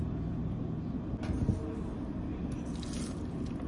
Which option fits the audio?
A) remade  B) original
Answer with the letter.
B